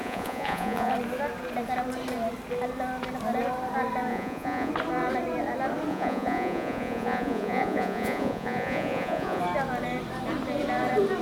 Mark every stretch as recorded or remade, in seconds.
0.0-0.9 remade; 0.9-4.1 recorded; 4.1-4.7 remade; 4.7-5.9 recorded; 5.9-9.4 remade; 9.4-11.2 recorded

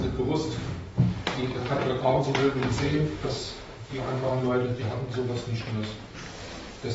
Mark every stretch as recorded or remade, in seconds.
0.0-0.6 recorded; 0.6-1.1 remade; 1.1-2.0 recorded; 2.0-4.3 remade; 4.3-6.9 recorded

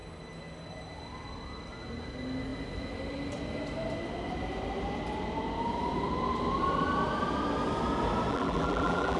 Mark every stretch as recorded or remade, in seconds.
0.0-8.3 recorded; 8.3-9.2 remade

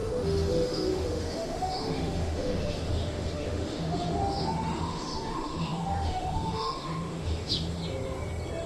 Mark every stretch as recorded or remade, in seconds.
0.0-7.8 remade; 7.8-8.7 recorded